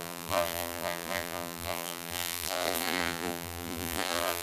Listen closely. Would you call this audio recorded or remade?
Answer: remade